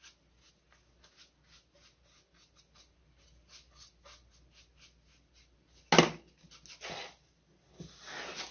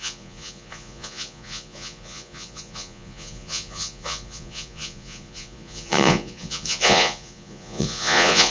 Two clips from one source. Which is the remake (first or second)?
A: second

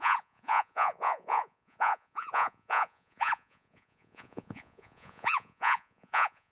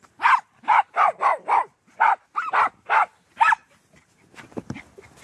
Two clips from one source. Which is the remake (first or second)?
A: first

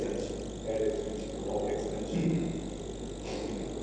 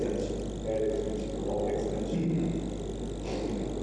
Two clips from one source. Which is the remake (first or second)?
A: first